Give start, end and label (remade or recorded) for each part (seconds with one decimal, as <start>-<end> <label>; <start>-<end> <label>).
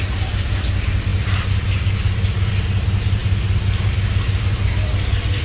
0.0-5.4 recorded